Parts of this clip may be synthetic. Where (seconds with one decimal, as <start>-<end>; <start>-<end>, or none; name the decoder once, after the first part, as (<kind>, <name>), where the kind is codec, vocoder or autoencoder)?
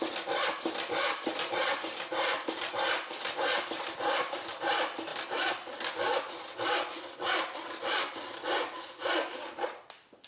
none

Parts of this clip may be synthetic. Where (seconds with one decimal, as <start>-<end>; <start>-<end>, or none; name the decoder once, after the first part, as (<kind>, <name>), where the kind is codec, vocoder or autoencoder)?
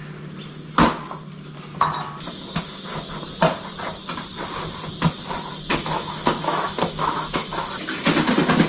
5.7-8.0 (autoencoder, DAC-VAE)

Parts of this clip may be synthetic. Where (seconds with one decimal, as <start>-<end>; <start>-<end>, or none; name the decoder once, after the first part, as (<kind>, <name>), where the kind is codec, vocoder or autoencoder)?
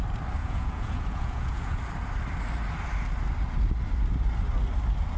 0.4-1.8 (vocoder, Vocos)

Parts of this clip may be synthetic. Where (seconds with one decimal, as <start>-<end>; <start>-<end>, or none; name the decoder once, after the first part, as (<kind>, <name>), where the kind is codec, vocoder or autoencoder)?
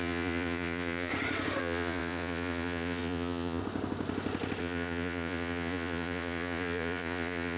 0.0-1.1 (vocoder, Vocos); 1.6-3.6; 4.6-7.6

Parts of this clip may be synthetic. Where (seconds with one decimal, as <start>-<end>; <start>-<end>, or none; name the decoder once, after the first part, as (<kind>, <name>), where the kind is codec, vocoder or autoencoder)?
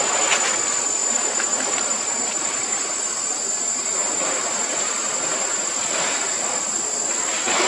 1.0-3.0 (vocoder, BigVGAN v2)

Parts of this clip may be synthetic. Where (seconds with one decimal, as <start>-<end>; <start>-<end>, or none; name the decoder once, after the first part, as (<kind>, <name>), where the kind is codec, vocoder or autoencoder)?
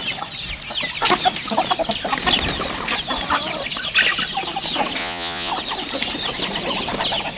5.0-5.5 (vocoder, Vocos)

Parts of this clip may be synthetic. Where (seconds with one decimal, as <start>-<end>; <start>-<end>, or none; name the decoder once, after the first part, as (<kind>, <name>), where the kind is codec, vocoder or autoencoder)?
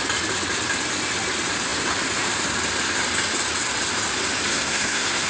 4.5-5.3 (codec, SNAC)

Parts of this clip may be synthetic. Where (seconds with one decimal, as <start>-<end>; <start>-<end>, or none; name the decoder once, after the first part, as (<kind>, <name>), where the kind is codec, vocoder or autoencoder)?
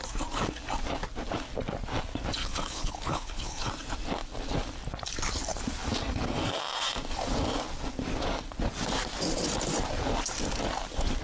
2.4-3.7 (codec, HILCodec)